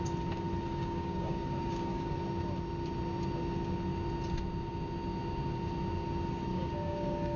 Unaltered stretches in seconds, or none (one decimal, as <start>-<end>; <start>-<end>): 0.0-0.7; 2.2-6.5